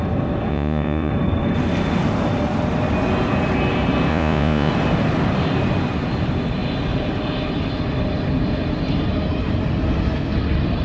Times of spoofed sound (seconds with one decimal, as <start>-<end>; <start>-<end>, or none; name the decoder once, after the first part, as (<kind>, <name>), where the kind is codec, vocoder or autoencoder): 0.5-1.1 (vocoder, Vocos); 4.1-4.7